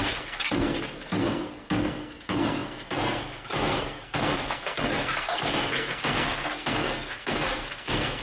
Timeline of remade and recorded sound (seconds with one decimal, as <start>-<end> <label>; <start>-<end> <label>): 0.0-8.2 remade